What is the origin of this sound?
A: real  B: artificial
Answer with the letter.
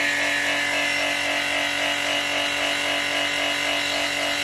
A